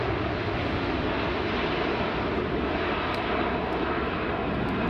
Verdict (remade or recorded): recorded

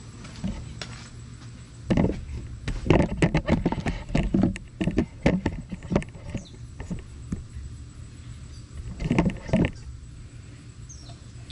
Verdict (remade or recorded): recorded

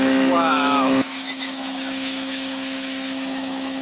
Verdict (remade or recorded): remade